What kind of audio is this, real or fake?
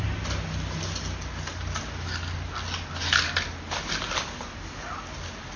real